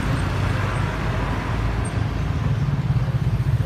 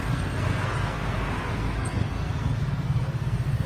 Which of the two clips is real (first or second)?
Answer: first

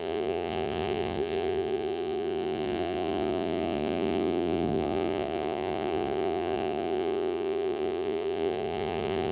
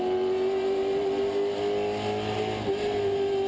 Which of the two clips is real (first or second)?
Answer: second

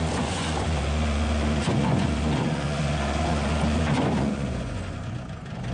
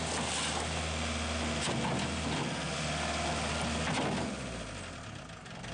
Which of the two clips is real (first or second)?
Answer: second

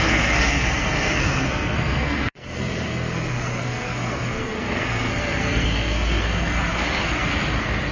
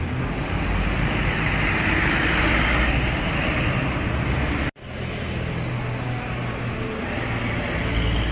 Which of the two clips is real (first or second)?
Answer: second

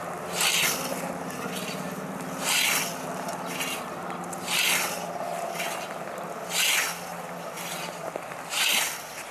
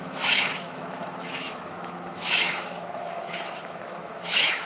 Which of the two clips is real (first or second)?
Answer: first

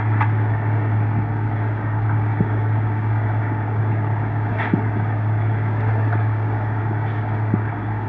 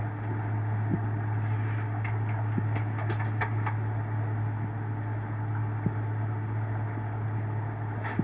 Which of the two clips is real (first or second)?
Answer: second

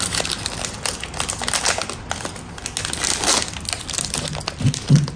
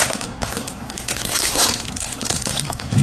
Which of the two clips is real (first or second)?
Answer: first